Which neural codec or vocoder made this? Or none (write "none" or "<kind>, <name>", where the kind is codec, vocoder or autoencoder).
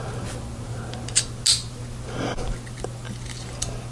none